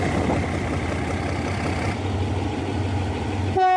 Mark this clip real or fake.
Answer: real